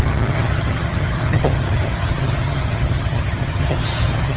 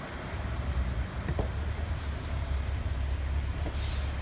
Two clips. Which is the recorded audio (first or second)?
second